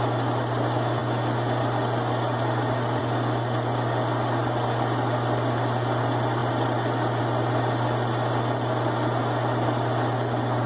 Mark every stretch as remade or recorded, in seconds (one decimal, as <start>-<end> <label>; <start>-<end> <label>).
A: 0.0-10.7 recorded